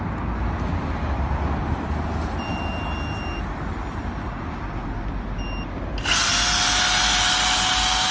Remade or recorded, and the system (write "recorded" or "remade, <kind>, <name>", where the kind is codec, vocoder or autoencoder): recorded